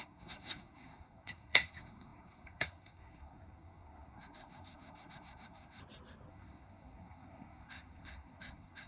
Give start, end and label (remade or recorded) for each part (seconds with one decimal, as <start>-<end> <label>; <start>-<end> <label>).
0.0-5.8 remade; 5.8-6.3 recorded; 6.3-8.9 remade